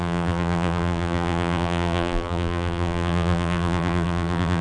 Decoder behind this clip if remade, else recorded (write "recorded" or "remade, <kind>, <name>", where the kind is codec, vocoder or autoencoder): remade, vocoder, BigVGAN v2